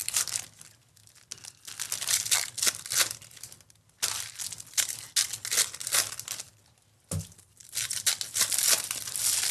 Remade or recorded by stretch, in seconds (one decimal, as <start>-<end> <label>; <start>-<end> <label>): 0.0-9.5 recorded